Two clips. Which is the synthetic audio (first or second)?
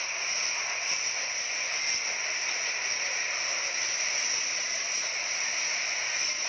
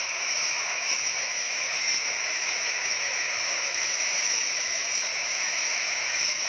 second